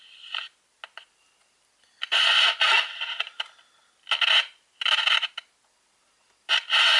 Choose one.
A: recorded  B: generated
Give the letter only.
A